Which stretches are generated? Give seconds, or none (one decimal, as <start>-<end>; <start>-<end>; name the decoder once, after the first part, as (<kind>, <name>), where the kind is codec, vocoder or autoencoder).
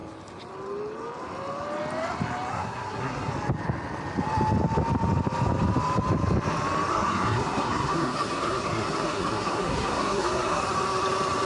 2.5-3.3 (codec, SNAC); 6.9-10.6